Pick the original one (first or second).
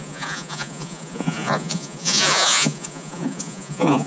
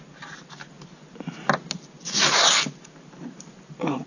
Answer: second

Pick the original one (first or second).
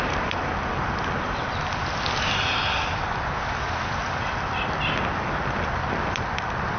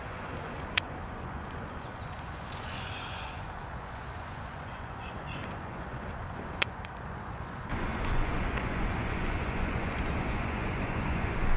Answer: first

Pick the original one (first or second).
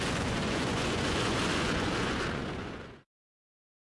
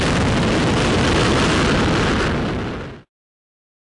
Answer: second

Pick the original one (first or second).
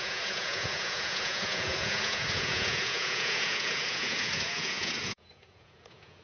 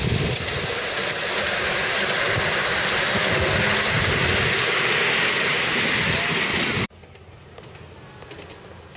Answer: second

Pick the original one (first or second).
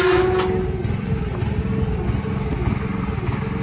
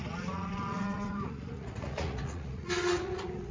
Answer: first